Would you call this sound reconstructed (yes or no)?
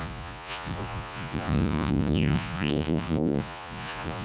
yes